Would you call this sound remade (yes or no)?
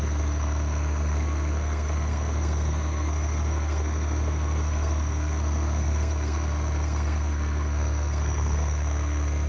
yes